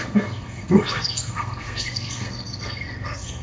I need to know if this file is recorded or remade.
remade